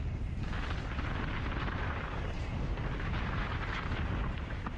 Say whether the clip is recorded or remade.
recorded